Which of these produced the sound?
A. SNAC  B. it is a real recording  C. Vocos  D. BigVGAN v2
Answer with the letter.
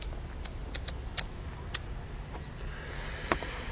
B